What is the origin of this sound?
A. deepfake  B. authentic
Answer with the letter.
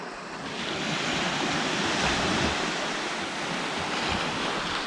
B